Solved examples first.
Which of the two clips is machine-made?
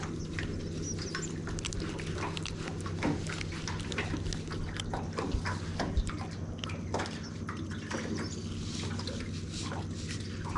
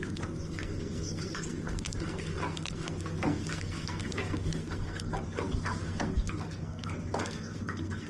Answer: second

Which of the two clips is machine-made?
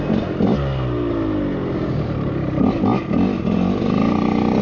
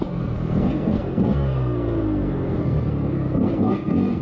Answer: second